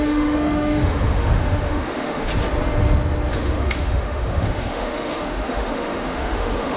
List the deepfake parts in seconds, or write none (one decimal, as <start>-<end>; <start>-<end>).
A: 0.0-2.3; 3.3-6.8